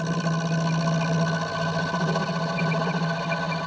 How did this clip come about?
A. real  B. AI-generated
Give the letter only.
A